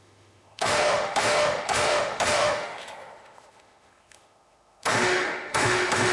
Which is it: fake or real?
fake